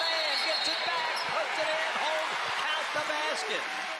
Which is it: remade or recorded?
recorded